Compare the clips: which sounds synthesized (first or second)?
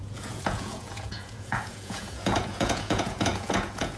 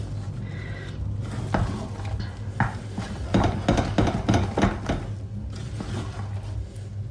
first